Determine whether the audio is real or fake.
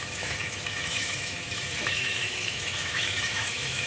fake